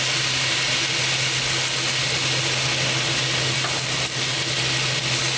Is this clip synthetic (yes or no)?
no